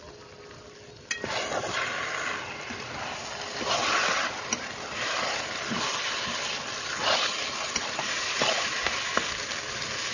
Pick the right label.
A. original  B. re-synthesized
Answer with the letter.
A